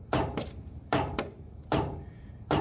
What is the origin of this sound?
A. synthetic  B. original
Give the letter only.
A